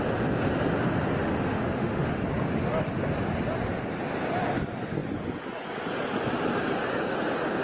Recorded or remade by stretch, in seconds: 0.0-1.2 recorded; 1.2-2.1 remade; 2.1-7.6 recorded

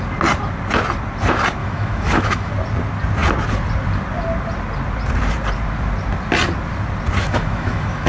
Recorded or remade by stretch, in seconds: 0.0-1.6 recorded; 1.6-2.5 remade; 2.5-7.2 recorded; 7.2-8.1 remade

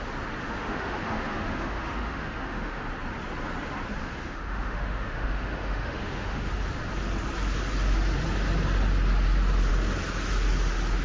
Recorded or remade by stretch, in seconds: 0.0-0.4 recorded; 0.4-2.8 remade; 2.8-4.0 recorded; 4.0-6.5 remade; 6.5-11.0 recorded

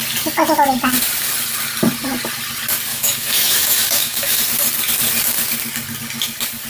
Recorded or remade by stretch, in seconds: 0.0-2.9 recorded; 2.9-4.4 remade; 4.4-6.7 recorded